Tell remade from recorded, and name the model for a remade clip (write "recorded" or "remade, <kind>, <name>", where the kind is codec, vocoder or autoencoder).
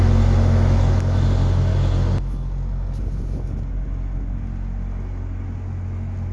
recorded